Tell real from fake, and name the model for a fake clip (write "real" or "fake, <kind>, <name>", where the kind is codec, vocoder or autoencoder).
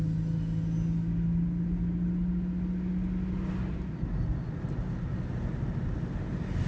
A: real